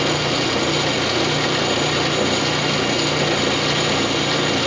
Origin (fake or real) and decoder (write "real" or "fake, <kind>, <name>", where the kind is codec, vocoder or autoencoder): real